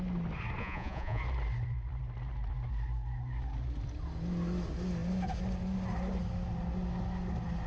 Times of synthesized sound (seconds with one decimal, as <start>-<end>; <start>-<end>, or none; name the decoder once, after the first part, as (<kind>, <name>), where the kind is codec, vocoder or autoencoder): 0.6-1.2 (vocoder, Vocos)